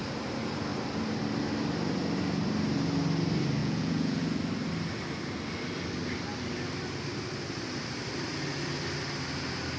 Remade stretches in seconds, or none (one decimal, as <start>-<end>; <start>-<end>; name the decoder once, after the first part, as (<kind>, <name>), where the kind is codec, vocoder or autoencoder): 3.6-4.2 (vocoder, Vocos)